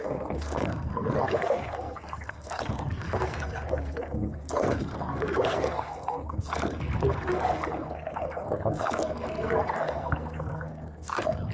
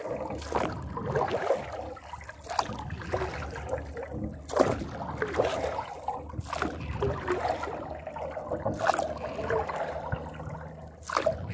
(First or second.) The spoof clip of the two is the first